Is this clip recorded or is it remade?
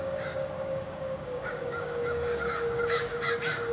remade